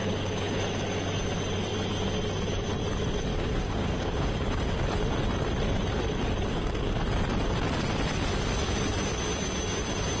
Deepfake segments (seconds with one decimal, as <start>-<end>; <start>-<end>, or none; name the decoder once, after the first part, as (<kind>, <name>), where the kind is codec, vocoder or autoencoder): 0.0-0.6 (codec, DAC); 3.3-4.8; 6.5-7.0